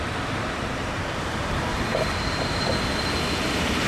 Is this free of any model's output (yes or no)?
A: no